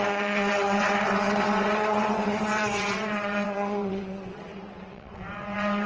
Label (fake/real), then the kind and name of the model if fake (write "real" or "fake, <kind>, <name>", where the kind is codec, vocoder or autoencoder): fake, vocoder, WaveNeXt